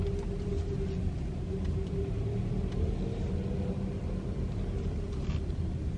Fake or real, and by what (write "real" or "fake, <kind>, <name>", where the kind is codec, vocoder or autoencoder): real